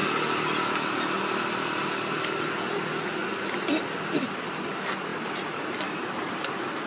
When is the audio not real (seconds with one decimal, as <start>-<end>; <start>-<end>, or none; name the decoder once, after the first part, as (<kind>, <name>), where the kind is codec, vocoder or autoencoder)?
4.0-6.9 (vocoder, BigVGAN v2)